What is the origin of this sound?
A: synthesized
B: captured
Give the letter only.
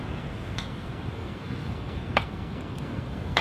A